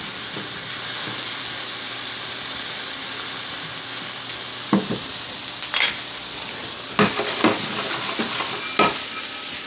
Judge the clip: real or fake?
real